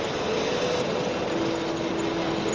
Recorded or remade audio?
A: recorded